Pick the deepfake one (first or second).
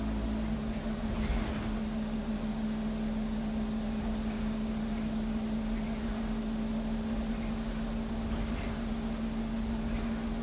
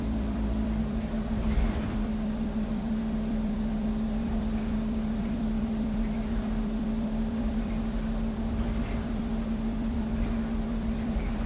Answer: second